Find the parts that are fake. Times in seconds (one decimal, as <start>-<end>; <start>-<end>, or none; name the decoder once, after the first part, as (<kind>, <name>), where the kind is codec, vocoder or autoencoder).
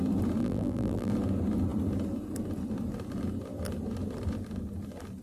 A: 0.4-1.1 (vocoder, BigVGAN v2)